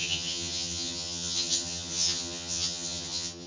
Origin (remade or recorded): remade